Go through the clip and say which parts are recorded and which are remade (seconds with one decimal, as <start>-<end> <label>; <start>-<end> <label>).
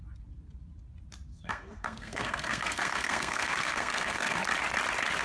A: 0.0-1.3 recorded; 1.3-4.4 remade; 4.4-5.2 recorded